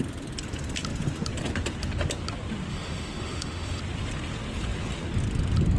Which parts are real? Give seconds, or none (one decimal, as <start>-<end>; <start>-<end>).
0.0-2.7; 3.8-5.8